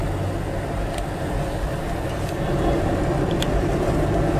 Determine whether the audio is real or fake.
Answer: real